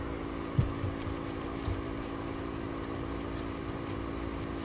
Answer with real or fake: real